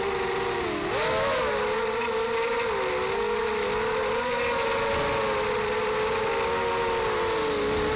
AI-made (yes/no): no